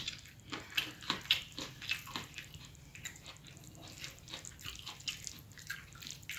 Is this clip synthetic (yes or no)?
no